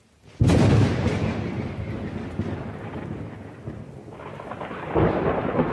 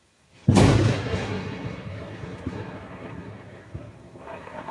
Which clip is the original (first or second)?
first